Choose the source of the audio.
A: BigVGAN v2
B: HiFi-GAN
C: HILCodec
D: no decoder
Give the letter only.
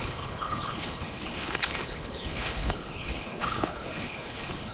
C